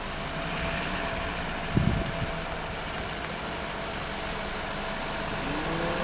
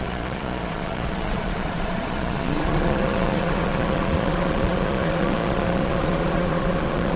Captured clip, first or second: first